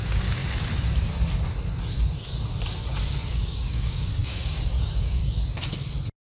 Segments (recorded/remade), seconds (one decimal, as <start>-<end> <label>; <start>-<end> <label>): 0.0-0.4 remade; 0.4-3.3 recorded; 3.3-5.2 remade; 5.2-6.3 recorded

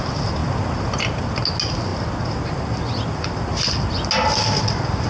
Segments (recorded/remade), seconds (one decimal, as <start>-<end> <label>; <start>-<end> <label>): 0.0-5.1 recorded

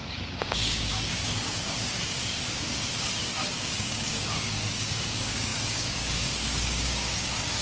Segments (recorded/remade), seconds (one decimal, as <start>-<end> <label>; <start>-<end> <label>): 0.0-7.6 remade